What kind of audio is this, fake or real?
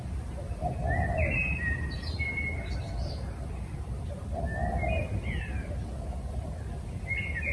real